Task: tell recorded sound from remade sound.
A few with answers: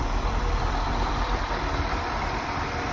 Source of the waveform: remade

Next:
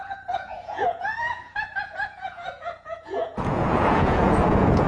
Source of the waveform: remade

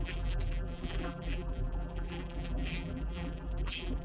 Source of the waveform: remade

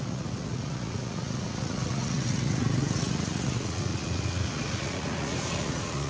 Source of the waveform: remade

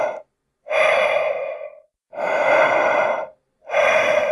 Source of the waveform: recorded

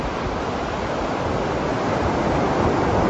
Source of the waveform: recorded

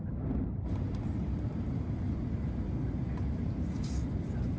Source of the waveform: recorded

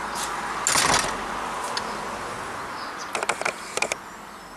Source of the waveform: recorded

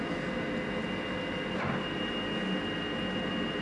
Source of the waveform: recorded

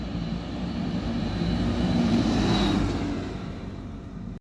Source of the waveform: remade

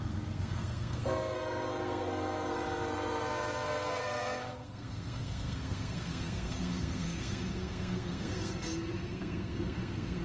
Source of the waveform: remade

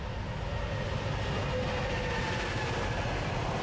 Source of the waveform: recorded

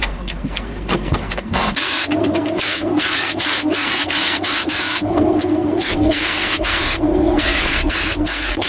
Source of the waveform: remade